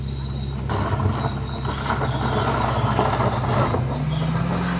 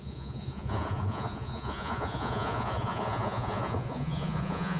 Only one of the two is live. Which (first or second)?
first